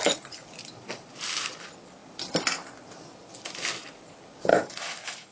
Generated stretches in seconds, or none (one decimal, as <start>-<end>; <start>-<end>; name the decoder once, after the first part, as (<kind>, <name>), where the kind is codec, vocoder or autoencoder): 4.5-5.3 (autoencoder, DAC-VAE)